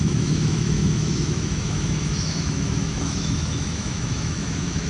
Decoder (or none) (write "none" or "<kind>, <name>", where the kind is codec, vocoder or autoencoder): autoencoder, DAC-VAE